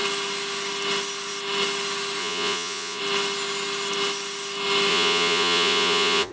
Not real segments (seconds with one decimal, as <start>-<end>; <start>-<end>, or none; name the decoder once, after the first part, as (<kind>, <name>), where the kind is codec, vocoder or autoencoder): 2.2-3.0 (vocoder, Vocos); 4.9-6.3

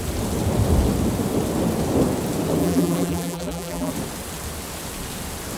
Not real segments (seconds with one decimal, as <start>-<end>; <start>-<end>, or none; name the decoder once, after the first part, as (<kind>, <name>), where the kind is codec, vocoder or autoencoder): 2.6-3.9 (vocoder, BigVGAN v2)

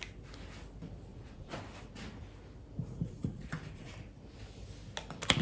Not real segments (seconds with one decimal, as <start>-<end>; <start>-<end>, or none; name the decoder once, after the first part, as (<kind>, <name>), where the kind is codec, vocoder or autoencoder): 1.1-1.6 (vocoder, Vocos); 3.0-3.9

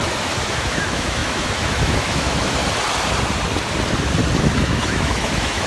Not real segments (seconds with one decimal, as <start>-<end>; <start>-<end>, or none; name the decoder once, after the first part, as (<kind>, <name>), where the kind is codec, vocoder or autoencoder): 0.0-2.6 (autoencoder, DAC-VAE); 4.4-5.7

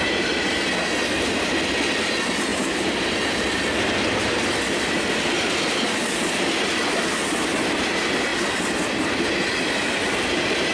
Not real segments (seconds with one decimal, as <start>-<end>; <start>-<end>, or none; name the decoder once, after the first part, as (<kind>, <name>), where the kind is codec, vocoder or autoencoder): none